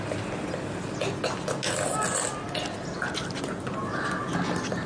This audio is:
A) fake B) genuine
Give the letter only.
B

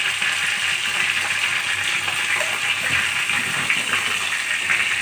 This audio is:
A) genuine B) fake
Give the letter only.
A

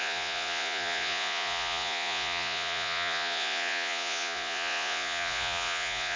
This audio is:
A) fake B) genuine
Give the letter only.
A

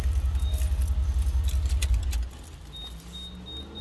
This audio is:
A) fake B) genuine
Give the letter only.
B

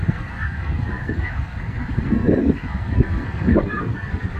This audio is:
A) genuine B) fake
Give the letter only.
B